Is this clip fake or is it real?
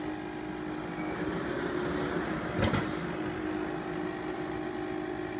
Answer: real